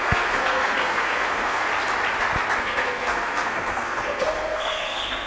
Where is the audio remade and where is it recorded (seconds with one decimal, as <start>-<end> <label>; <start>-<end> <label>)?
0.0-1.7 remade; 1.7-2.6 recorded; 2.6-5.3 remade